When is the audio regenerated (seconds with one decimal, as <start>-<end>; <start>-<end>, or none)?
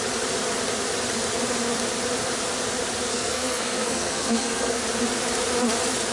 3.1-4.8